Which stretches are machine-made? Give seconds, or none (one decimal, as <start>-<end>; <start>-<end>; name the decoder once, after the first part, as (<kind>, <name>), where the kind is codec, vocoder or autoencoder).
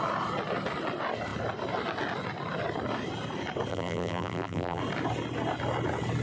3.7-4.8 (vocoder, BigVGAN v2)